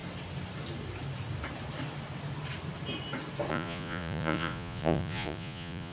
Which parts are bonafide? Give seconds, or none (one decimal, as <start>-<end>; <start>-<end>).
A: 0.0-3.5